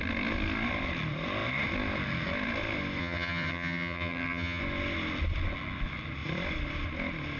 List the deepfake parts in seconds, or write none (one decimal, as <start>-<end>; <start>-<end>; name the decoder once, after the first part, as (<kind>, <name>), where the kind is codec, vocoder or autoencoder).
3.0-4.6 (vocoder, HiFi-GAN)